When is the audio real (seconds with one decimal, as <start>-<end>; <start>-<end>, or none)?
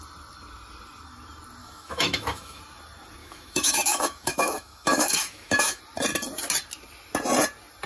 0.0-1.6; 2.6-3.2; 5.8-7.9